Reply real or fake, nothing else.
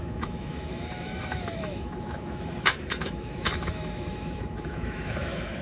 fake